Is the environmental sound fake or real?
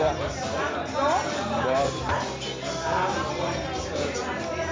real